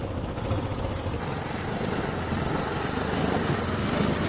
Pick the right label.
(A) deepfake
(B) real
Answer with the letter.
B